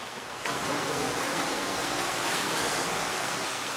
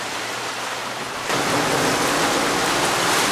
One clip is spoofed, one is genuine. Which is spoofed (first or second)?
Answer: first